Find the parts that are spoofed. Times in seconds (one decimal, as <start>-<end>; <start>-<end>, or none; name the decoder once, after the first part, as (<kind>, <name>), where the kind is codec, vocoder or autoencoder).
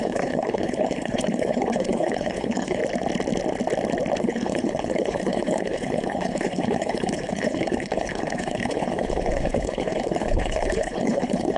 0.0-2.8 (codec, HILCodec); 4.2-11.6